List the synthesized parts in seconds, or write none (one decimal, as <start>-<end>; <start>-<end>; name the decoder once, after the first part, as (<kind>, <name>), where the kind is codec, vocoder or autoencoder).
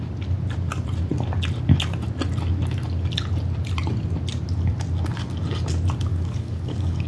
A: 6.1-7.1 (codec, DAC)